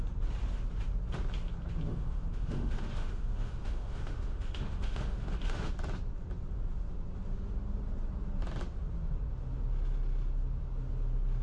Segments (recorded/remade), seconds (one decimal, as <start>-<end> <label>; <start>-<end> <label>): 0.0-1.9 recorded; 1.9-5.7 remade; 5.7-11.4 recorded